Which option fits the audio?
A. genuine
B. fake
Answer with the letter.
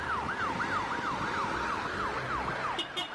A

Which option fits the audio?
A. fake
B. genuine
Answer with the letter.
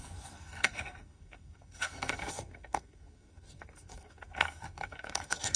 A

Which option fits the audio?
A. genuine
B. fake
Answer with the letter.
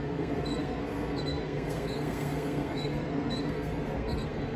B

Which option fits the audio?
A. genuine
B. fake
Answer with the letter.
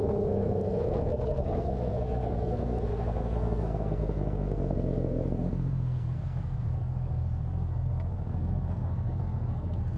B